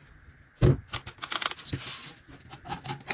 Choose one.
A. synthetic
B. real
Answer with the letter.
B